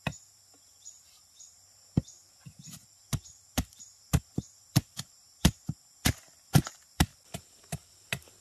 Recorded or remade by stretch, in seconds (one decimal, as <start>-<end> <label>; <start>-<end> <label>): 0.0-8.4 recorded